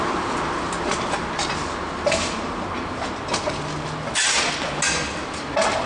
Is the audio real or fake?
real